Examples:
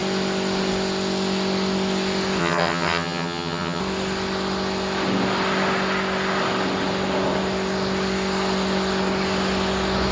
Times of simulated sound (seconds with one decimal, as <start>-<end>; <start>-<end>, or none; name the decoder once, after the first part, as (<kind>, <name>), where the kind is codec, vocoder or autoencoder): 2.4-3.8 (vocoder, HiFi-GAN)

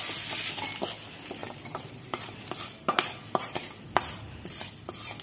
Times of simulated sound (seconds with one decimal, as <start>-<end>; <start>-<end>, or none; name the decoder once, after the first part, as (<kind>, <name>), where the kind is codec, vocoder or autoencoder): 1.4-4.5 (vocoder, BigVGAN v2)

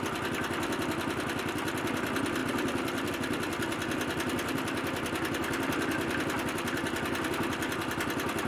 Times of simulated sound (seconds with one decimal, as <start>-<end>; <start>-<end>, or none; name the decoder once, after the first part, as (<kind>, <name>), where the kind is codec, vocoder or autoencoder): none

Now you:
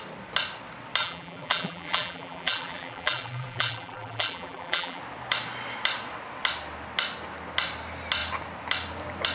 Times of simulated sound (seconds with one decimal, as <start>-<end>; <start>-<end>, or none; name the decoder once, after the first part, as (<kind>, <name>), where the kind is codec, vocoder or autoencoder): 1.0-5.0 (vocoder, BigVGAN v2)

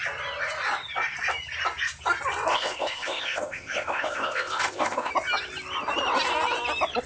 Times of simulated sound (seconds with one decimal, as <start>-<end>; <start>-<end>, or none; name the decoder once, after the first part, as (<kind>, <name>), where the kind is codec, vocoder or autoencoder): 2.5-5.1 (codec, ZipCodec)